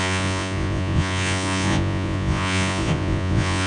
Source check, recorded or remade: remade